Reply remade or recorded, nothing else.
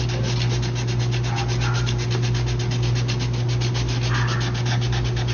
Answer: recorded